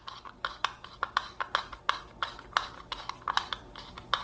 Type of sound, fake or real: real